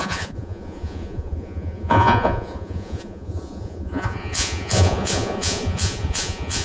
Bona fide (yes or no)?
no